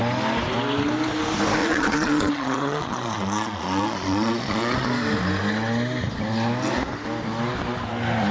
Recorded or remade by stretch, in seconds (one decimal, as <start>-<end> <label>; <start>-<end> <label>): 0.0-1.6 recorded; 1.6-4.9 remade; 4.9-8.3 recorded